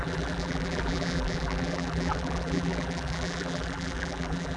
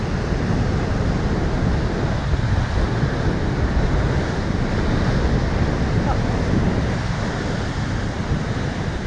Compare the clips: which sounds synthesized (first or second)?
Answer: first